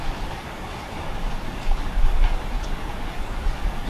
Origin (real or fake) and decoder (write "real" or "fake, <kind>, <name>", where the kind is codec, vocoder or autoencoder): fake, codec, DAC